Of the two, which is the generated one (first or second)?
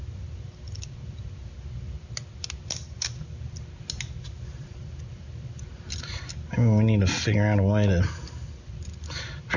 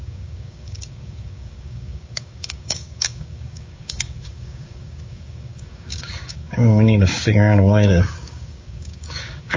second